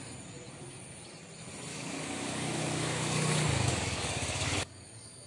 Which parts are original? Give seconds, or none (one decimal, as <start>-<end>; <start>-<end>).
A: 0.0-1.7